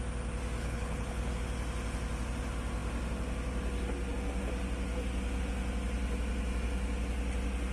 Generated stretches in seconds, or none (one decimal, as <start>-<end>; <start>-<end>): 0.6-1.3